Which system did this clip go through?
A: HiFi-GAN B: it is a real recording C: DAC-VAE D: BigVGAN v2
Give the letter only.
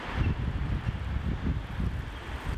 B